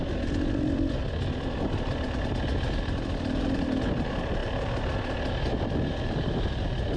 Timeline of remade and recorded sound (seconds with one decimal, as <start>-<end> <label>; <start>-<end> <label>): 0.0-7.0 recorded